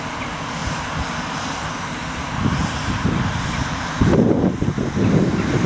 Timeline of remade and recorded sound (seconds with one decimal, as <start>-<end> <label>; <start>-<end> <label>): 0.0-5.7 recorded